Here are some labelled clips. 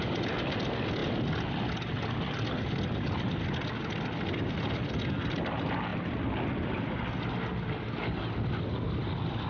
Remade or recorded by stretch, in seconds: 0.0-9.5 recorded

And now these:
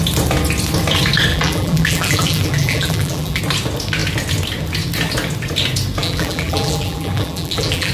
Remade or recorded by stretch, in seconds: 0.0-1.3 recorded; 1.3-3.4 remade; 3.4-6.0 recorded; 6.0-7.9 remade

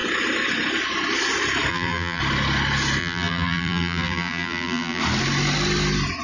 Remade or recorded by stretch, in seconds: 0.0-1.7 recorded; 1.7-2.2 remade; 2.2-3.0 recorded; 3.0-5.0 remade; 5.0-6.2 recorded

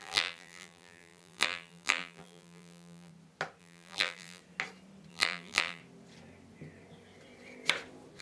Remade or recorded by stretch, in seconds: 0.0-3.1 remade; 3.1-3.6 recorded; 3.6-4.4 remade; 4.4-5.1 recorded; 5.1-5.8 remade; 5.8-8.2 recorded

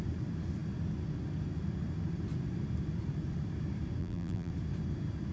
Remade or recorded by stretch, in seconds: 0.0-4.0 recorded; 4.0-4.5 remade; 4.5-5.3 recorded